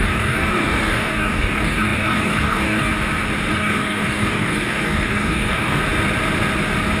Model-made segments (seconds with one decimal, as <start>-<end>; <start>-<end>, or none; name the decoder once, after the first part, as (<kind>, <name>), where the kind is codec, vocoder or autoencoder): 0.0-2.9 (codec, DAC); 3.5-5.8